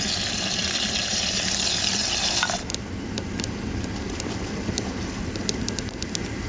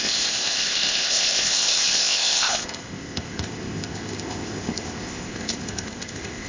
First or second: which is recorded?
first